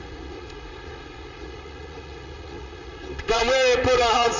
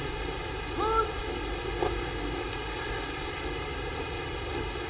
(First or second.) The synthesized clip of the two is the first